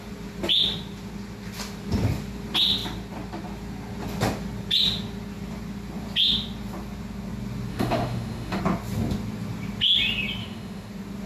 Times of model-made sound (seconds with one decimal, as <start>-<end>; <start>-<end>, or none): 7.7-8.6; 10.4-10.9